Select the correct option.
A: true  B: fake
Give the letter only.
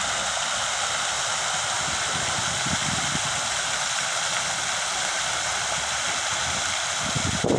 A